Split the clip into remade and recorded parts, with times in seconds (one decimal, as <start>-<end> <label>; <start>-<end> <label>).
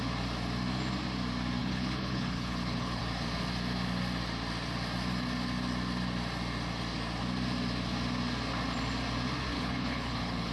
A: 0.0-1.6 recorded; 1.6-3.0 remade; 3.0-9.5 recorded; 9.5-10.5 remade